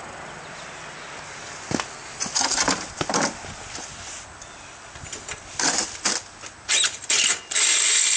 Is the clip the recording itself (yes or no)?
yes